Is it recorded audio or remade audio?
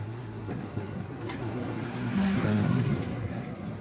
remade